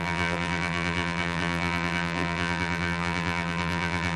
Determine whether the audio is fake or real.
fake